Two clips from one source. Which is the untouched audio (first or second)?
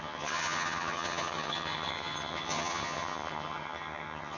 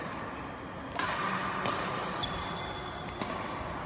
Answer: second